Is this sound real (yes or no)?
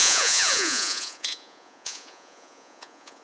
no